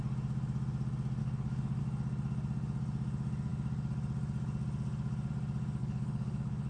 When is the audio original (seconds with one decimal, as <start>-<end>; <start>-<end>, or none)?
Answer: 0.0-1.2; 1.8-5.8